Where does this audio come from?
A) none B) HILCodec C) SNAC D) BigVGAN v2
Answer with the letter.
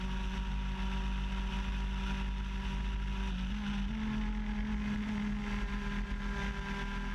A